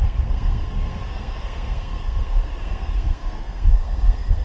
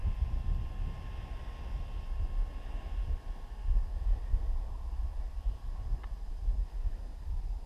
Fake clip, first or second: first